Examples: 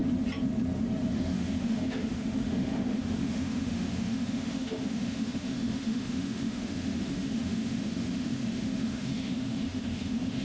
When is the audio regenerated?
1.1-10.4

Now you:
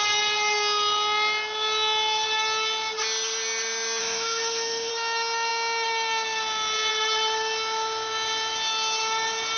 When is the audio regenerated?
4.0-4.9

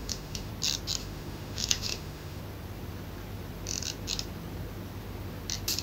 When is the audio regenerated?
0.0-0.5; 1.0-2.4

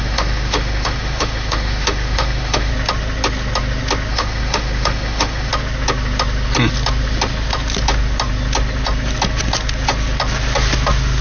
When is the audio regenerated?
0.0-2.7; 4.1-5.5

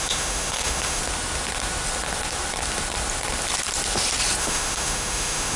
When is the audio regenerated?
0.0-1.0; 4.4-5.6

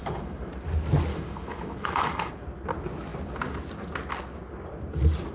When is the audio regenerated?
0.0-0.5; 1.1-2.3